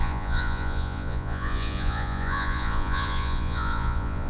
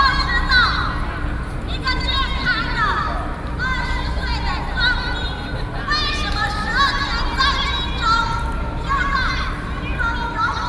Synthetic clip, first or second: first